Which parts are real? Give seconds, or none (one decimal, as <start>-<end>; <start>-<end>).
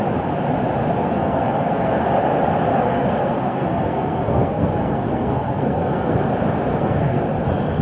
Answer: 0.0-1.0; 2.0-2.7; 6.2-6.7; 7.2-7.8